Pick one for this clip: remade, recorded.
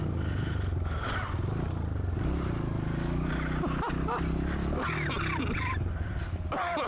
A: recorded